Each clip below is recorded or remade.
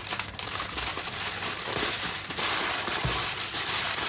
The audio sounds recorded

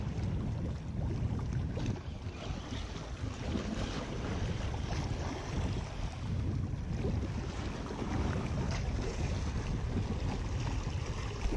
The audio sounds recorded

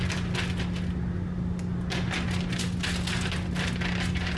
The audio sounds recorded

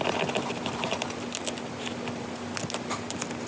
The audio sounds recorded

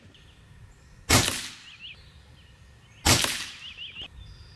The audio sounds recorded